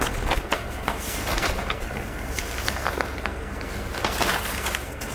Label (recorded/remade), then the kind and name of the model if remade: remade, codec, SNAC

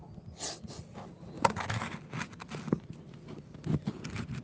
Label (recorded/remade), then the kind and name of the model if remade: recorded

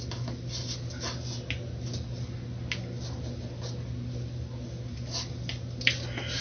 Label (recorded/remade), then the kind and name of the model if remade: recorded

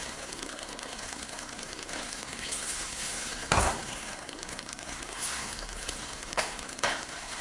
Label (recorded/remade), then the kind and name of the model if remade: remade, codec, SNAC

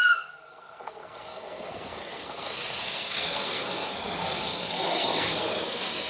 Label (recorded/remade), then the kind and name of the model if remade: remade, codec, SNAC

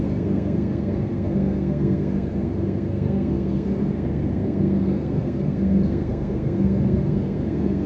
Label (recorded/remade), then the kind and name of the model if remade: remade, codec, SNAC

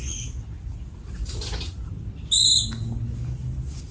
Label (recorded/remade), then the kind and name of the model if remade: recorded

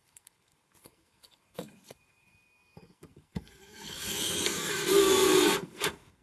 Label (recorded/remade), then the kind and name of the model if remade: remade, codec, SNAC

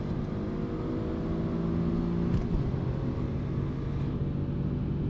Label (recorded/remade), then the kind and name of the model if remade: recorded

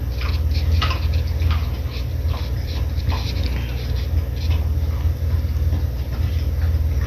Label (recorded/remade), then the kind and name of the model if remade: recorded